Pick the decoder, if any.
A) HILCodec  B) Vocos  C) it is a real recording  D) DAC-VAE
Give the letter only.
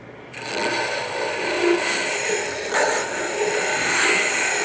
C